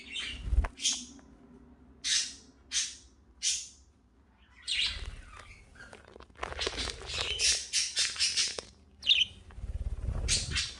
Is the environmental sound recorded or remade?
recorded